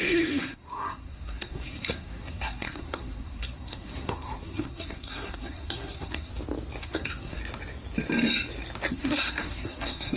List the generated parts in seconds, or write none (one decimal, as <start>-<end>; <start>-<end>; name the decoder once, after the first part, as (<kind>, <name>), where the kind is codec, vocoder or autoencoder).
0.0-6.3 (codec, SNAC); 6.8-7.4; 8.9-10.2